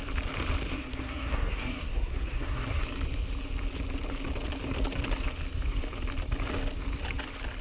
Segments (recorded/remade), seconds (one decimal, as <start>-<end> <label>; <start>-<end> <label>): 0.0-0.7 recorded; 0.7-2.8 remade; 2.8-7.6 recorded